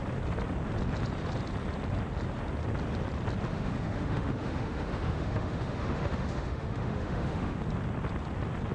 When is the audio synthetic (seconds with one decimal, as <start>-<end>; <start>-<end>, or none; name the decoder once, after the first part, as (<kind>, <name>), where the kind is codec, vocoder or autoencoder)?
3.5-7.6 (autoencoder, DAC-VAE)

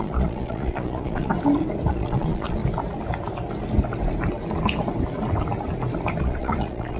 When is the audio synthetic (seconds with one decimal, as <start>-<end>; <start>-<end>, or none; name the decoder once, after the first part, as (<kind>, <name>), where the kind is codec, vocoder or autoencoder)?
0.0-1.3 (vocoder, Vocos); 1.9-2.6; 6.2-7.0

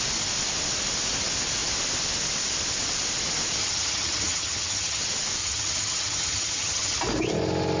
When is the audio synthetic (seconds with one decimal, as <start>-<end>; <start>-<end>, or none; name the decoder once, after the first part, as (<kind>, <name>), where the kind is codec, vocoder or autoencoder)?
3.6-5.0 (vocoder, HiFi-GAN); 5.4-7.0

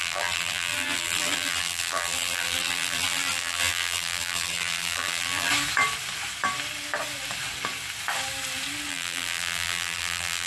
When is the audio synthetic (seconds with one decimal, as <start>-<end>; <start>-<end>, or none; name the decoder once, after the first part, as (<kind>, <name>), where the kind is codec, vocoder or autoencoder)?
0.0-5.5 (vocoder, BigVGAN v2); 8.9-10.5

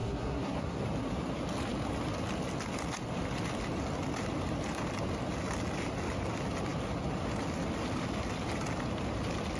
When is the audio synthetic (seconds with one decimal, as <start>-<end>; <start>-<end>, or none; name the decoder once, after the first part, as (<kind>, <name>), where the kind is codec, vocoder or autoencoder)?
0.0-0.8 (codec, SNAC)

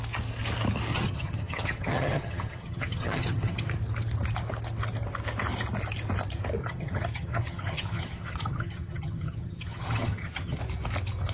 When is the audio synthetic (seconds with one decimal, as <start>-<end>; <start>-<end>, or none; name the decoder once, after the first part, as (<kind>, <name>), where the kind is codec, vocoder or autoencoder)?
0.9-3.6 (vocoder, HiFi-GAN); 6.6-10.6

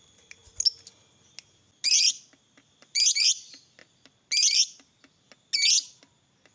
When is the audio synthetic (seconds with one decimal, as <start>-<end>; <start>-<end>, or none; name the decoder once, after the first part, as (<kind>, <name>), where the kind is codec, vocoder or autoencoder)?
none